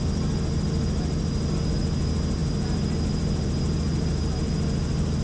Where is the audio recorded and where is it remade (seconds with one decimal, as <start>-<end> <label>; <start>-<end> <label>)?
0.0-5.2 recorded